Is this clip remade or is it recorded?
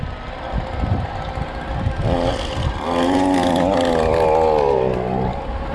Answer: recorded